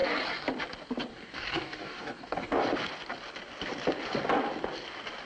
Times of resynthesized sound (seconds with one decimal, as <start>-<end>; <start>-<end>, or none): 1.1-2.6